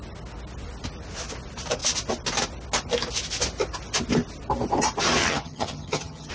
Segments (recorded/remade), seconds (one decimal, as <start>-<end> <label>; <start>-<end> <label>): 0.0-5.2 recorded; 5.2-6.3 remade